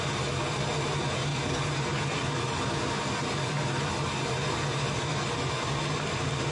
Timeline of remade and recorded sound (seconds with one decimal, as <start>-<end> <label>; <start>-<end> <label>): 0.0-6.5 recorded